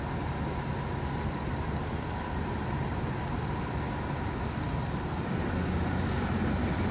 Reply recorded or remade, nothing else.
recorded